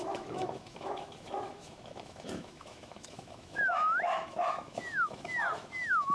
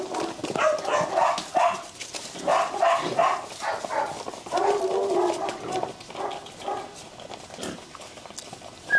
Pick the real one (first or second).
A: second